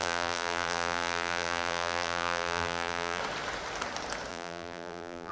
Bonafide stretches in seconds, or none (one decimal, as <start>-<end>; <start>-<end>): 3.2-4.3